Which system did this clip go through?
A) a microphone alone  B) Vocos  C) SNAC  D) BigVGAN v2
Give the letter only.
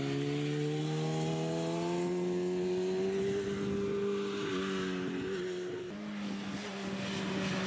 A